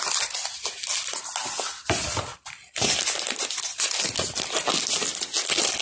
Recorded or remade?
recorded